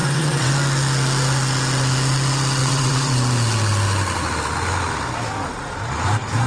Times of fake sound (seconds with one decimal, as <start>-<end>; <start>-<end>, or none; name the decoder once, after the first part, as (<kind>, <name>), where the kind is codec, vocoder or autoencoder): 0.0-0.5 (vocoder, WaveNeXt); 2.6-3.1